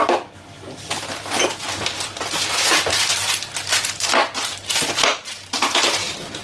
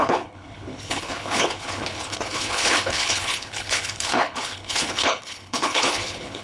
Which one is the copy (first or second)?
second